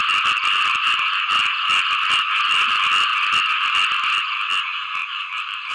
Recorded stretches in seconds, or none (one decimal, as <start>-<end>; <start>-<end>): 0.0-5.0